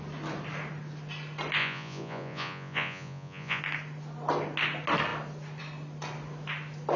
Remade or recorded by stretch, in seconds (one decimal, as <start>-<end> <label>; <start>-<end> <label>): 0.0-1.6 recorded; 1.6-3.6 remade; 3.6-7.0 recorded